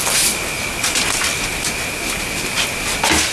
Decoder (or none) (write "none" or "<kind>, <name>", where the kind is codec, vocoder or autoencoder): none